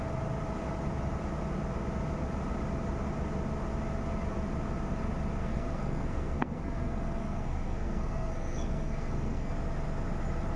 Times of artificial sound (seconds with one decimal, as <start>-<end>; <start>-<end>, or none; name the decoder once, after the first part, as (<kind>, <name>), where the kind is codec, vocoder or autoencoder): 5.4-9.5 (codec, SNAC)